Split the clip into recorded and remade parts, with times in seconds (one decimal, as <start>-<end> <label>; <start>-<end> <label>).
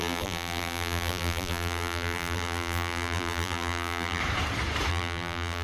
0.0-4.2 remade; 4.2-4.9 recorded; 4.9-5.6 remade